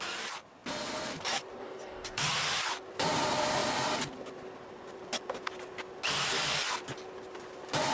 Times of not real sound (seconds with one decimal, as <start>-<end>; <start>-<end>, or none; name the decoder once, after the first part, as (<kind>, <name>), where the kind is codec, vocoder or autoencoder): 1.6-2.3 (codec, DAC)